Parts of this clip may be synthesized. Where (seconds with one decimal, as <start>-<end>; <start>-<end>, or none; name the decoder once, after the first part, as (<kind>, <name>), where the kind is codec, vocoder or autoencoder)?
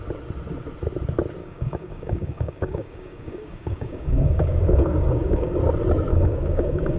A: 1.4-5.6 (codec, DAC); 6.1-7.0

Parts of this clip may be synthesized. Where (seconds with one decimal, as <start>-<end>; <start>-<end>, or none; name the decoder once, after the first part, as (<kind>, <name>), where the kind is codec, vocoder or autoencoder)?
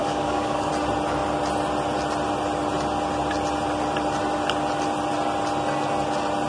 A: 0.0-0.7 (codec, DAC)